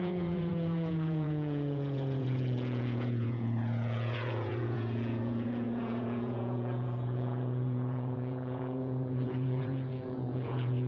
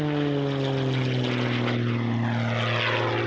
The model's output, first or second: first